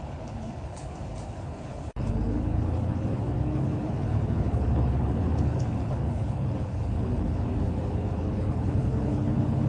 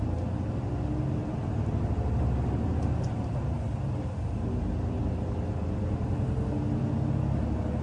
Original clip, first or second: second